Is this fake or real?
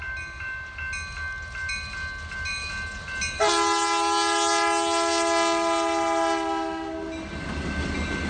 real